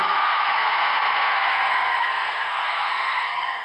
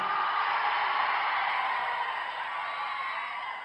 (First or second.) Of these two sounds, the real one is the second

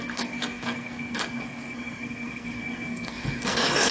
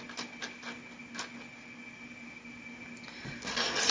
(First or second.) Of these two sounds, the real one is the second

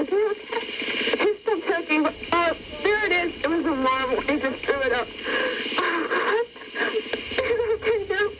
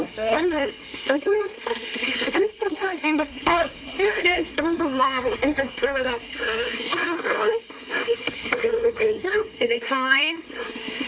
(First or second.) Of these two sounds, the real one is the first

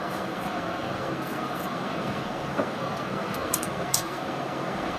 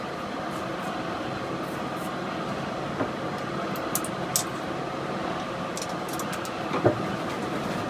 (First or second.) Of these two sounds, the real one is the second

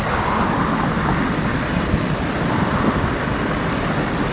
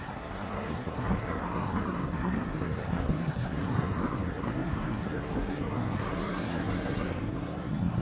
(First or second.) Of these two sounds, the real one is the first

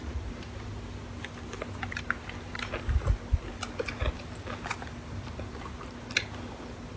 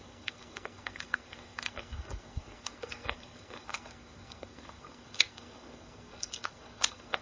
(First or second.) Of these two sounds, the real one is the first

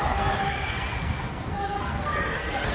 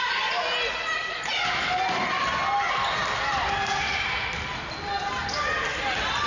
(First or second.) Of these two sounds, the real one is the second